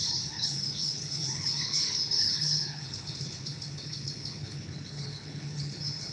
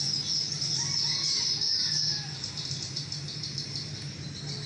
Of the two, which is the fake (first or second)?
first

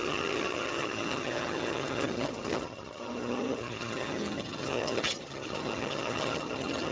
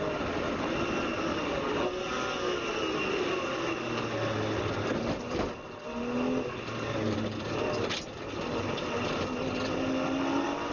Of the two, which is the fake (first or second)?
first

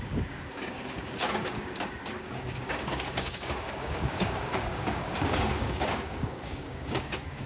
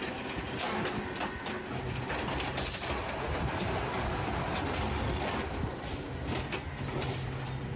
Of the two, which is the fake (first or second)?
first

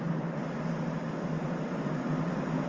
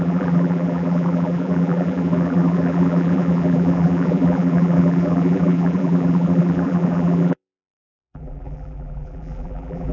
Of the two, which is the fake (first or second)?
second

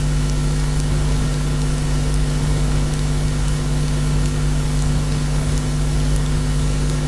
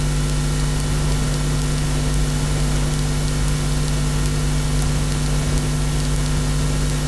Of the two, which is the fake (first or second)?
first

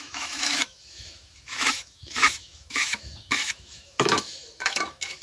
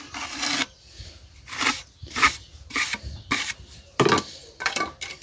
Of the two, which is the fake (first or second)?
first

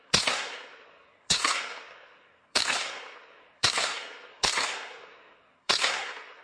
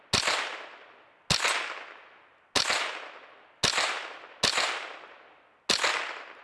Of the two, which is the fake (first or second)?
first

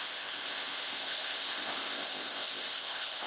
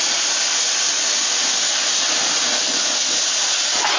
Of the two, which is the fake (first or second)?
first